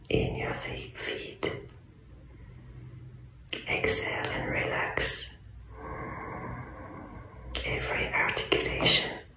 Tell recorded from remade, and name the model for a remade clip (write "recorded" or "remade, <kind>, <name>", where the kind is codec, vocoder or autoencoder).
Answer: recorded